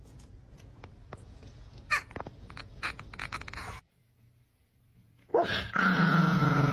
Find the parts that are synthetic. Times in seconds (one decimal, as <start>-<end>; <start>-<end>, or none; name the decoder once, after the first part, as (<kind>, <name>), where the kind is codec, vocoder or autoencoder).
0.0-6.7 (vocoder, Vocos)